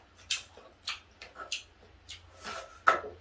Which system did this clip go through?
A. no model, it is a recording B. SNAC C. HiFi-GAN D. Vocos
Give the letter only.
A